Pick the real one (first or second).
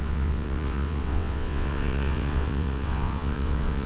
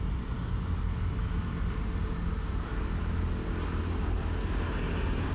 second